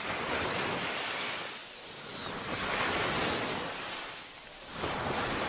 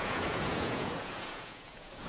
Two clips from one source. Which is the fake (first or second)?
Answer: second